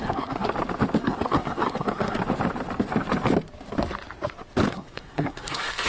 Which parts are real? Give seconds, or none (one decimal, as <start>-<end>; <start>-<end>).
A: 0.5-1.0; 2.2-4.7